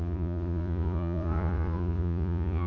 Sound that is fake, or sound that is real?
fake